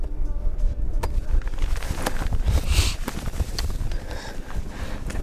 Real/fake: real